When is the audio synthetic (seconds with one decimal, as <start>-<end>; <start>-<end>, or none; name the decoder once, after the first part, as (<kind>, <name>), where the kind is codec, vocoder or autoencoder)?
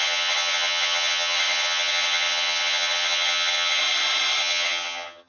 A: 0.0-3.8 (vocoder, HiFi-GAN); 4.4-5.3